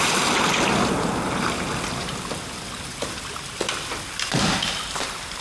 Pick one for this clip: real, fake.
real